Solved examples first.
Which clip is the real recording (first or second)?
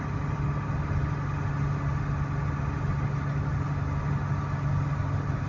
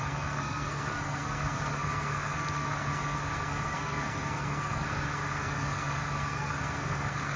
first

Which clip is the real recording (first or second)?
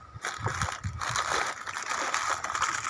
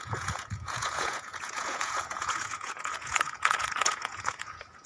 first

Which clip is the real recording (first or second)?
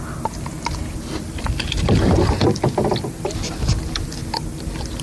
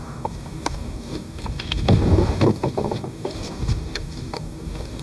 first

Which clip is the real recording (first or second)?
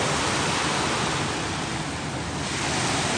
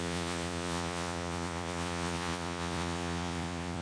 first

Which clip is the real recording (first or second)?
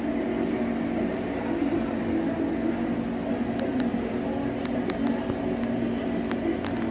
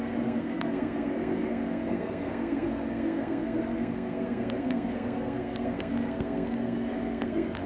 first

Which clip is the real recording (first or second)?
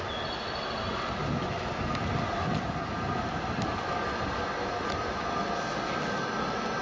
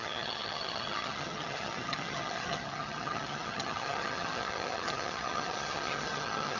first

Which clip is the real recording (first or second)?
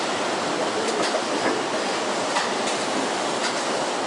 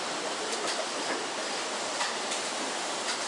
first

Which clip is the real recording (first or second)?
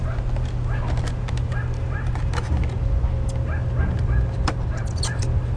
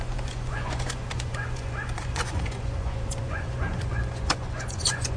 first